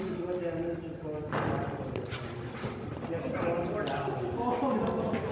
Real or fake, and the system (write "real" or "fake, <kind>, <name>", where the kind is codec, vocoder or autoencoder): real